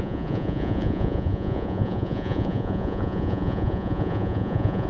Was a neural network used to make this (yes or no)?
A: yes